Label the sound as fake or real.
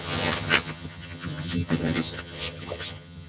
fake